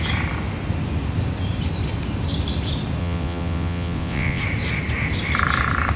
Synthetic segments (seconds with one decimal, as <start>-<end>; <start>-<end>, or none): 3.0-4.4